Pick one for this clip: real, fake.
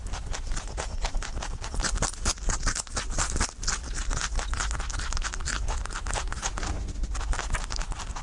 real